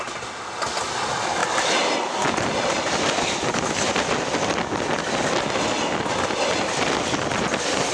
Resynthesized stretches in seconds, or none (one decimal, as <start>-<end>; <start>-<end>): none